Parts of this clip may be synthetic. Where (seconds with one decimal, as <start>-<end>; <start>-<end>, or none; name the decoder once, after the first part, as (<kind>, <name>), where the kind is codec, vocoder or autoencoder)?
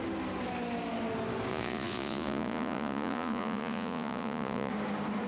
1.5-4.7 (vocoder, Vocos)